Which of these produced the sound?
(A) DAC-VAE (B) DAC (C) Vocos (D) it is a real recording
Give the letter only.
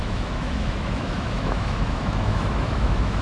A